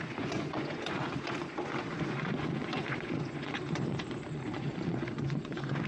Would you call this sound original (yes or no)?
no